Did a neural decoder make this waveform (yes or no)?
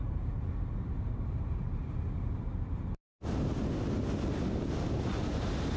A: no